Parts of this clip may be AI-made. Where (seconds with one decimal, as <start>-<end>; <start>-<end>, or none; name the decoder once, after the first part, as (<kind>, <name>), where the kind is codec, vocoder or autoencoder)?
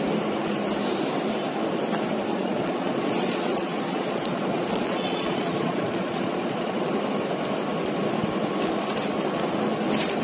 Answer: 2.3-6.9 (vocoder, Vocos)